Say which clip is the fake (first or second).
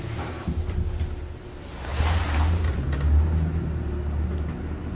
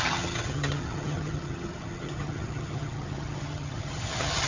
second